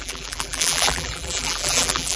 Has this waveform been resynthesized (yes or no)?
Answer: yes